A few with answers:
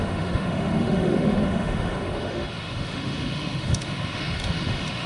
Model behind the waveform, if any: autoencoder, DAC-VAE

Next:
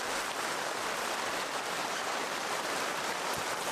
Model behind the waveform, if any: none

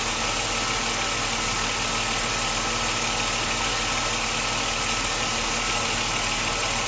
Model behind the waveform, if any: none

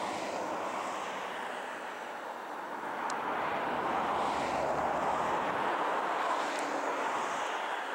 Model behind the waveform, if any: none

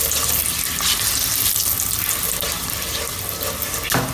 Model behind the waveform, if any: none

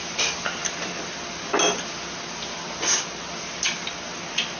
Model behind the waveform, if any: none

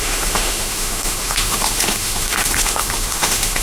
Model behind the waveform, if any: autoencoder, DAC-VAE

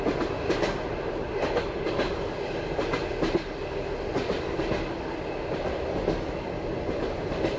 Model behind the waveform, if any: none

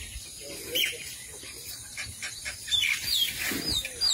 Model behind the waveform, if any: none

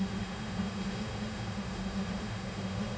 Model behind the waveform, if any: autoencoder, DAC-VAE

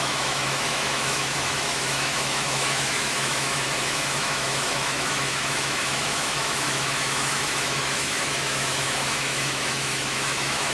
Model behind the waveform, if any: autoencoder, DAC-VAE